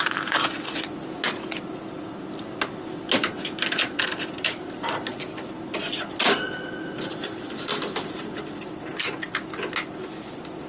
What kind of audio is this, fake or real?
real